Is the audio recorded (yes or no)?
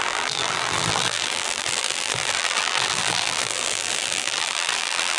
no